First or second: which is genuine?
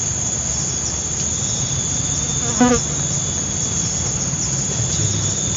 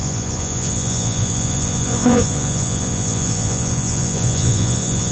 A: first